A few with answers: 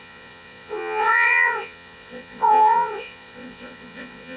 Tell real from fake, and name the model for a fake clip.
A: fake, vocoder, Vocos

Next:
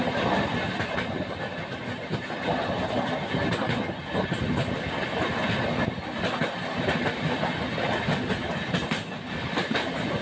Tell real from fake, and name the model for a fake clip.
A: real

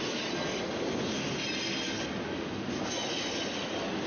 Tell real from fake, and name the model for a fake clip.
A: real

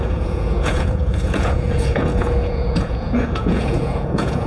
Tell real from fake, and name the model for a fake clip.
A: fake, vocoder, Vocos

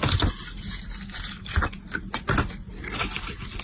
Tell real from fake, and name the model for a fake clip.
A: real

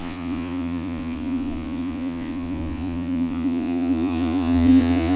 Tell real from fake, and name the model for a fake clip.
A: fake, vocoder, Vocos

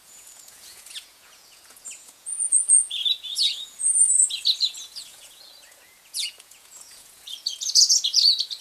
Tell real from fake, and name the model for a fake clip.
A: fake, vocoder, Vocos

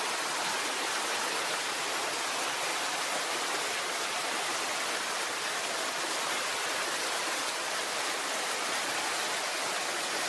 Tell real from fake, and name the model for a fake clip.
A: real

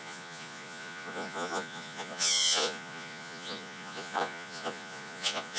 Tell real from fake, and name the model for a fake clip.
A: fake, vocoder, Vocos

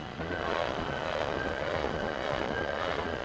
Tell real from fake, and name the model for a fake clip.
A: fake, vocoder, Vocos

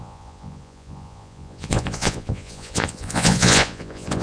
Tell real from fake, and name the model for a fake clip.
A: fake, vocoder, Vocos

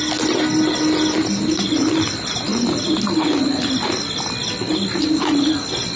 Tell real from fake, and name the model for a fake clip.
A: real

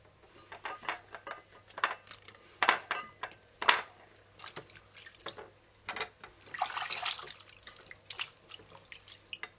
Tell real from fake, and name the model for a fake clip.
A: real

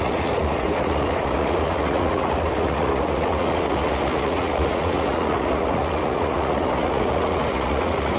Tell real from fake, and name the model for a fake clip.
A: fake, vocoder, Vocos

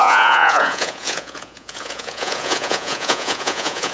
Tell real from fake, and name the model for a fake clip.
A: fake, vocoder, Vocos